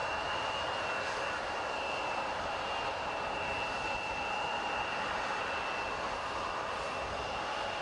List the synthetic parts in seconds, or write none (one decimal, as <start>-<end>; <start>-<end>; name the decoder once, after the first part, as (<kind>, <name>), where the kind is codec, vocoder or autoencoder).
none